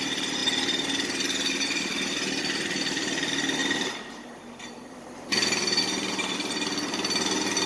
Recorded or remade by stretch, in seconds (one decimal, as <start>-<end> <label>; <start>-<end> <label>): 0.0-7.7 recorded